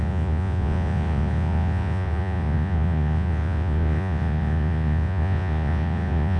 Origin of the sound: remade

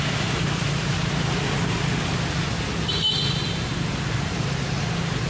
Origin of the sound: recorded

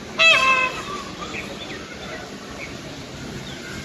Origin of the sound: recorded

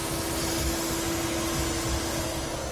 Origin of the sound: recorded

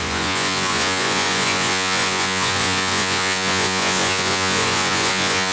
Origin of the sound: remade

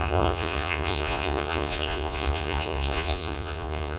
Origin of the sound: remade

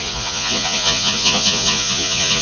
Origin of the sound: remade